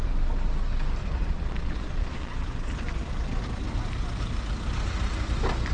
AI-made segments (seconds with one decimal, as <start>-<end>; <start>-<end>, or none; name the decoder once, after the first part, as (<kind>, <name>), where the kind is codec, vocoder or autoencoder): 1.0-2.3 (vocoder, Vocos)